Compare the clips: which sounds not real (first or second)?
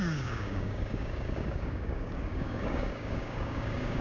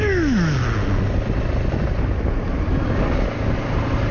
first